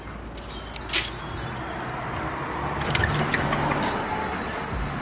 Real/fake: real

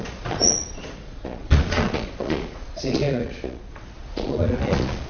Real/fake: fake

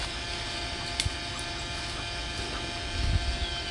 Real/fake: real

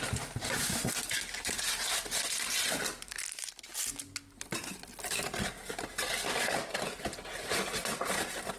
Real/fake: real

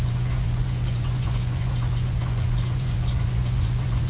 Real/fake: fake